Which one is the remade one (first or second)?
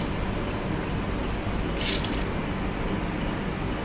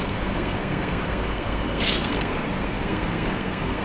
second